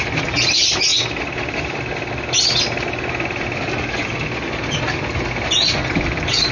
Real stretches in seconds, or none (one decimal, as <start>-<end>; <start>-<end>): 0.0-6.5